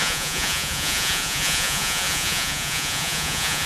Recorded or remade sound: remade